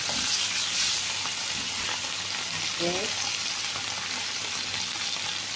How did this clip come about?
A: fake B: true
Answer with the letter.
B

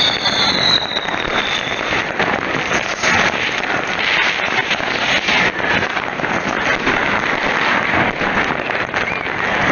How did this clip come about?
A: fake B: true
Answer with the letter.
B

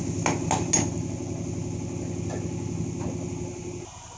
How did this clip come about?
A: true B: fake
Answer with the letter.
A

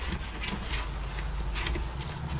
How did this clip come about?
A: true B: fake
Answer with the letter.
A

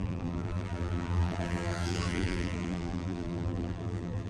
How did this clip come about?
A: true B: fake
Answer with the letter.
B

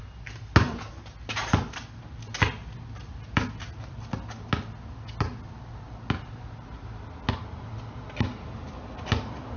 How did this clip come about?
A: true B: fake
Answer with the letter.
A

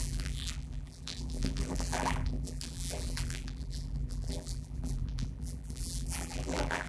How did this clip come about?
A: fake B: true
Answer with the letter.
A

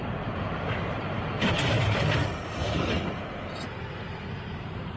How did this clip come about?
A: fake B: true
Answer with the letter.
A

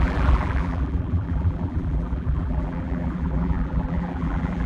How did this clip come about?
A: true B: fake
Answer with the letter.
B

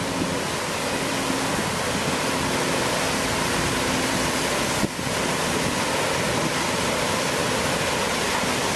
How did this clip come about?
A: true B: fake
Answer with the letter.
B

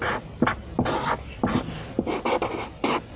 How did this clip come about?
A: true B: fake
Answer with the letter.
A